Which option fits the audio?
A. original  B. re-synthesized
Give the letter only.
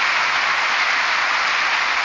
A